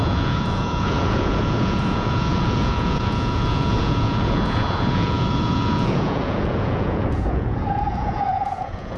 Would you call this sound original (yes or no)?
no